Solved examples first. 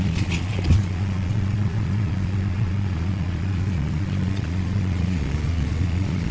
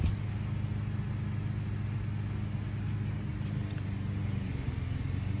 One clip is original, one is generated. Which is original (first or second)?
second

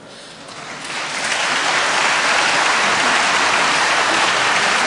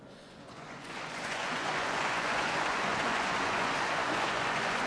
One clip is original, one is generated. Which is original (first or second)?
first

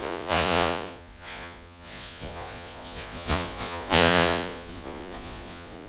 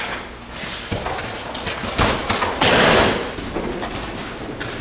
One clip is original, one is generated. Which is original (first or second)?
second